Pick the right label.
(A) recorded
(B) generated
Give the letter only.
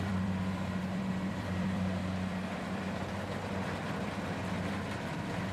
B